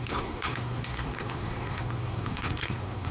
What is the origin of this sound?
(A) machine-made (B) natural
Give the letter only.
A